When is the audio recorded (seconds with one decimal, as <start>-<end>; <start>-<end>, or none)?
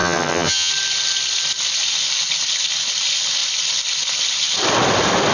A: 0.7-5.3